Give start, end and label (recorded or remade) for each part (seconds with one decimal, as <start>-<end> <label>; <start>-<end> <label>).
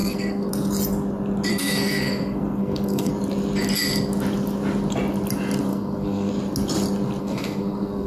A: 0.0-0.5 remade; 0.5-1.5 recorded; 1.5-3.1 remade; 3.1-5.7 recorded; 5.7-6.3 remade; 6.3-7.2 recorded; 7.2-8.1 remade